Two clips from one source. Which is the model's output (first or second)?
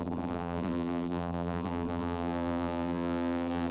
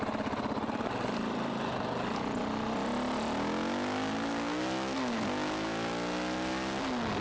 first